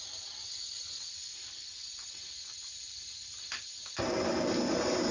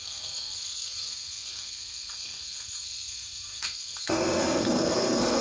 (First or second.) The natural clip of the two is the first